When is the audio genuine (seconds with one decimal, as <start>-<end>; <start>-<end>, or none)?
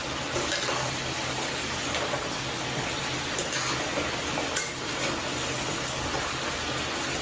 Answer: 0.0-7.2